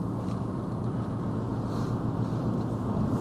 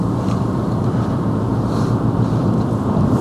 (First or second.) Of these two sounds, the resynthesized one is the second